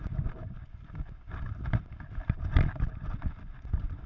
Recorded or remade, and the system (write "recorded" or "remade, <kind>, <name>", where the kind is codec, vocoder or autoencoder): recorded